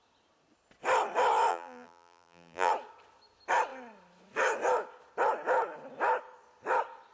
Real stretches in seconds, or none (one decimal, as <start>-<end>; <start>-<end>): 0.0-1.5; 2.7-7.1